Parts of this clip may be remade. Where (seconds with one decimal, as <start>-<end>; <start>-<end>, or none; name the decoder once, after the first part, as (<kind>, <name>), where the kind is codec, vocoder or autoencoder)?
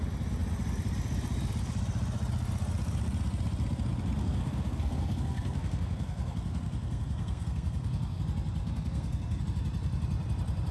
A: 4.2-8.2 (codec, SNAC); 8.6-9.4